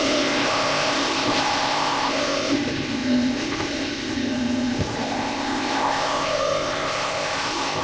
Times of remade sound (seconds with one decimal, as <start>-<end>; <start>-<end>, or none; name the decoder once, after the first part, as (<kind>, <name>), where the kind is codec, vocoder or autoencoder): 0.0-7.8 (codec, ZipCodec)